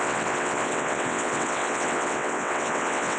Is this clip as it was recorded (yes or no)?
no